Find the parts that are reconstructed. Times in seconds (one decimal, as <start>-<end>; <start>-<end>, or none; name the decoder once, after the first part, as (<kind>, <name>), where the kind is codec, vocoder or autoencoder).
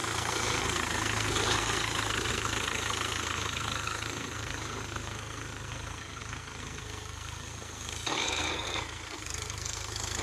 0.0-10.2 (codec, SNAC)